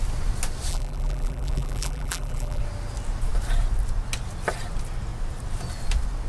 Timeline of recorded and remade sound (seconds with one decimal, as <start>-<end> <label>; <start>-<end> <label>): 0.0-0.7 recorded; 0.7-2.6 remade; 2.6-6.3 recorded